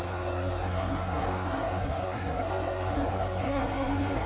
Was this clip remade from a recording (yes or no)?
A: yes